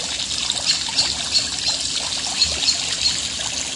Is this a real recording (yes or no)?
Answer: yes